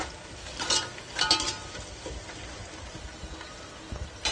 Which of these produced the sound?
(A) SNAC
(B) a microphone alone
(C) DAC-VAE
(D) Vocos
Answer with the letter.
B